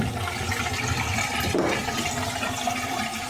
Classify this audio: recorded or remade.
recorded